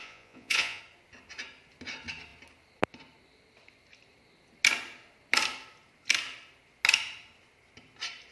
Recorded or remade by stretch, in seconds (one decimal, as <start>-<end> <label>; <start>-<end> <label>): 0.0-0.8 remade; 0.8-8.3 recorded